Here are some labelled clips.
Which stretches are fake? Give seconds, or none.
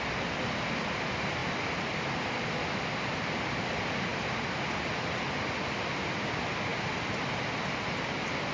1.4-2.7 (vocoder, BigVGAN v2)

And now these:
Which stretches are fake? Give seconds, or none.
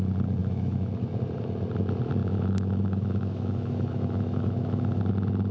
0.4-0.9 (autoencoder, DAC-VAE); 2.2-5.0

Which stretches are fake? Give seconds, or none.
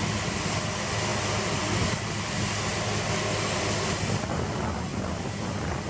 none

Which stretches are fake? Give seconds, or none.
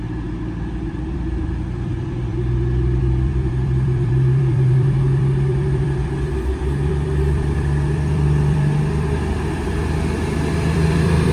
0.0-11.3 (vocoder, BigVGAN v2)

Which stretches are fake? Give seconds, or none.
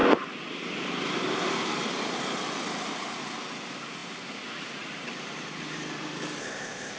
6.4-7.0 (codec, ZipCodec)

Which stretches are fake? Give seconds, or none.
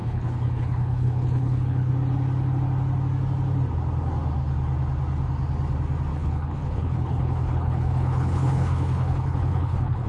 0.0-1.9 (codec, HILCodec); 6.1-10.1